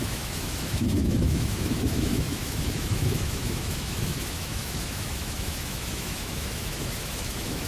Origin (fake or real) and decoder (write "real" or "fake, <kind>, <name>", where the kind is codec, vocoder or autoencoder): fake, autoencoder, DAC-VAE